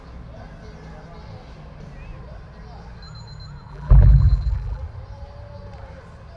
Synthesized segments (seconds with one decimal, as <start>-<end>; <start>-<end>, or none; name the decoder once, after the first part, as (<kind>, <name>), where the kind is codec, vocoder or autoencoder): 3.7-4.8 (vocoder, BigVGAN v2)